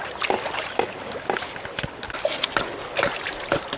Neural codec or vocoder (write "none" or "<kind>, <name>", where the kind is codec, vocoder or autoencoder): none